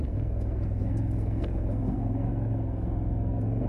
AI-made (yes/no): yes